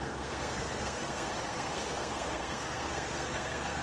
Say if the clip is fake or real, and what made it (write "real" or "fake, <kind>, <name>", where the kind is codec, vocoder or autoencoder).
fake, codec, SNAC